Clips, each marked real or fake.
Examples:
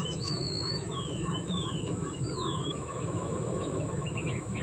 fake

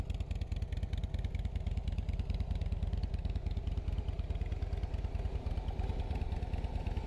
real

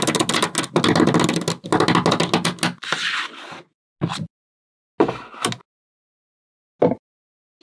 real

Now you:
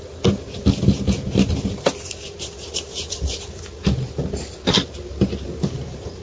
real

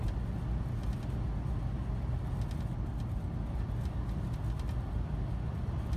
real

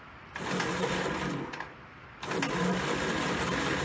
real